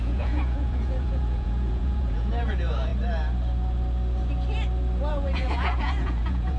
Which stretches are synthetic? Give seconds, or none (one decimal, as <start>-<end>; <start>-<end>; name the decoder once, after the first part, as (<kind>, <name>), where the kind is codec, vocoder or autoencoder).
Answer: 0.0-2.9 (vocoder, Vocos); 5.1-6.6